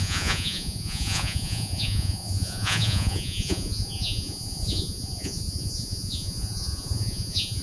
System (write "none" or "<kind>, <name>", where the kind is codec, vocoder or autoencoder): vocoder, Vocos